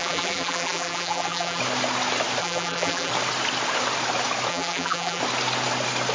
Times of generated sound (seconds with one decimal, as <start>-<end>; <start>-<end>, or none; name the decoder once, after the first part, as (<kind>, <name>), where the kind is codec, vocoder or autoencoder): 0.0-1.6 (vocoder, BigVGAN v2); 2.4-3.1; 4.5-5.2